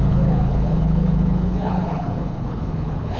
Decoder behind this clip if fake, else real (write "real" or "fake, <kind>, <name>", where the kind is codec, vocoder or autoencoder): fake, codec, HILCodec